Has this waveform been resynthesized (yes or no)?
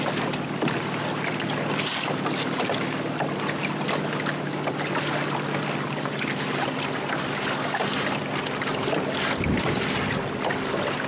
no